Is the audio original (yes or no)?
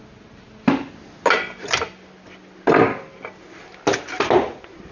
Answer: yes